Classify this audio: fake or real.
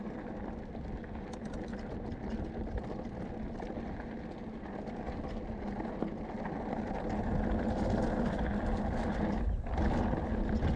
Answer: real